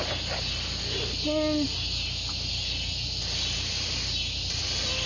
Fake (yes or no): no